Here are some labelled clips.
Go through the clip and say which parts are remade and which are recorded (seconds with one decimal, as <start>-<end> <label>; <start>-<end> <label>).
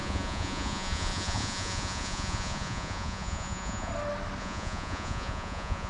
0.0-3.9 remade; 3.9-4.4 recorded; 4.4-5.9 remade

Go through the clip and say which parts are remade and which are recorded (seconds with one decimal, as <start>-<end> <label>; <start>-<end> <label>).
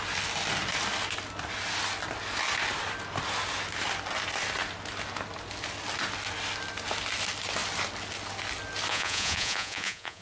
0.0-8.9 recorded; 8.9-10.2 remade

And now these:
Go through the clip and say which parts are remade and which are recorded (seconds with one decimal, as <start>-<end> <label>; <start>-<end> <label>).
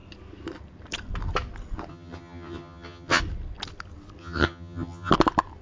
0.0-1.9 recorded; 1.9-3.2 remade; 3.2-4.2 recorded; 4.2-5.1 remade; 5.1-5.6 recorded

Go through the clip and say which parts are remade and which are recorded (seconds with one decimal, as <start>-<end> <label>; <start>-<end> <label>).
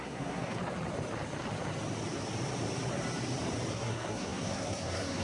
0.0-0.6 remade; 0.6-3.7 recorded; 3.7-5.2 remade